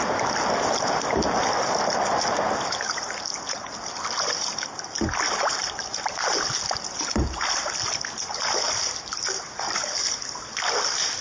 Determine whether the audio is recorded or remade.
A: recorded